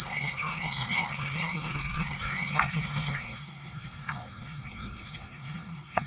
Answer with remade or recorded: remade